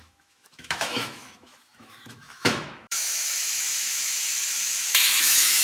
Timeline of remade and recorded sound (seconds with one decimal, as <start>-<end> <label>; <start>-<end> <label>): 0.0-5.6 remade